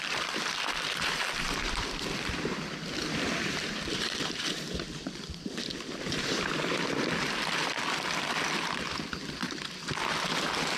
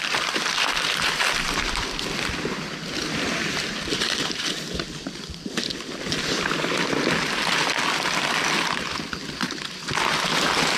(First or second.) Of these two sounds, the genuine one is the second